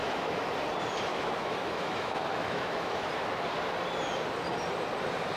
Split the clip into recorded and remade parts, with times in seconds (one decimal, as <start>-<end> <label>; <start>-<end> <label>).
0.0-0.5 remade; 0.5-1.1 recorded; 1.1-3.1 remade; 3.1-5.4 recorded

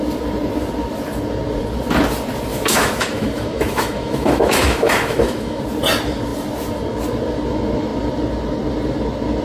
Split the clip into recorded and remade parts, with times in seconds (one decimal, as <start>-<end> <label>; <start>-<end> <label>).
0.0-2.5 recorded; 2.5-5.6 remade; 5.6-9.4 recorded